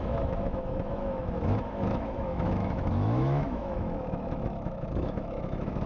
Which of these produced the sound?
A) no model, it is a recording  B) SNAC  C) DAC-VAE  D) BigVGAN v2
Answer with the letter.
C